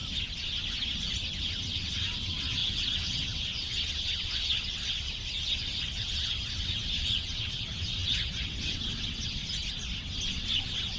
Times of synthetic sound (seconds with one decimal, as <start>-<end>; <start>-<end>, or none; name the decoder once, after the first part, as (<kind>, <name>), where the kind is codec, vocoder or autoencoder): 1.6-9.4 (vocoder, WaveNeXt); 10.3-11.0